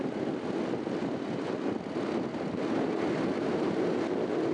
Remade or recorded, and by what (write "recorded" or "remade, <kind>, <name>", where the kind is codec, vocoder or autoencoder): recorded